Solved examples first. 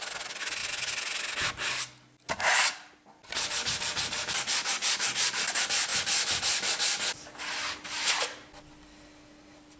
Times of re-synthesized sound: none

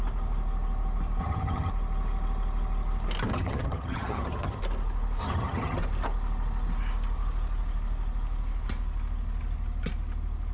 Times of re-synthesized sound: 1.2-1.7 (vocoder, HiFi-GAN); 3.3-4.6; 5.2-5.8

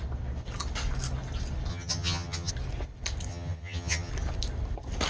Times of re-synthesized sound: 1.7-2.5 (vocoder, HiFi-GAN); 3.3-4.1

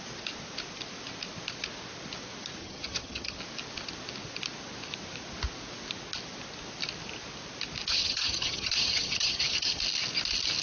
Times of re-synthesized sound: 2.6-3.4 (vocoder, HiFi-GAN); 7.9-9.8

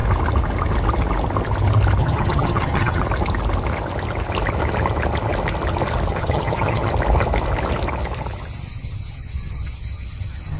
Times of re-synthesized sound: 2.0-3.0 (vocoder, HiFi-GAN); 6.1-6.9; 8.7-10.6